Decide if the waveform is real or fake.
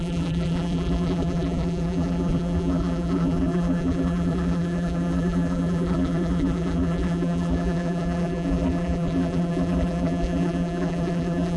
fake